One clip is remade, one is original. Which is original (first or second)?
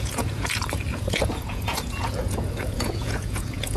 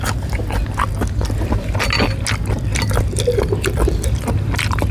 second